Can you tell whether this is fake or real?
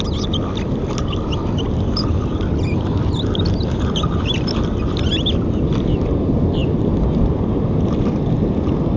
real